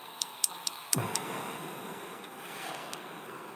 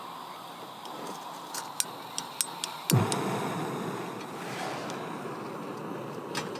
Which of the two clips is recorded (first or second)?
second